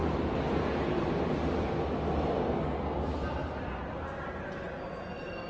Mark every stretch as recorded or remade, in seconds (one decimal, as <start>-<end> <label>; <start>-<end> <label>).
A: 0.0-3.4 recorded; 3.4-4.5 remade; 4.5-5.5 recorded